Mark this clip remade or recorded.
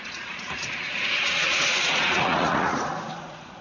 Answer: remade